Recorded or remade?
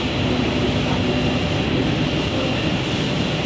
recorded